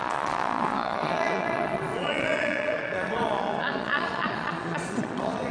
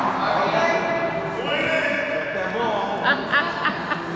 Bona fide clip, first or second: second